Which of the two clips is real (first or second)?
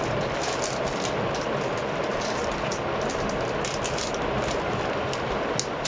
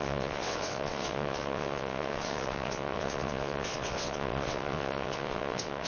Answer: first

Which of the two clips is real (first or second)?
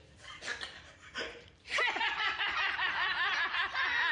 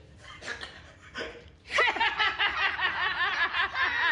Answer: second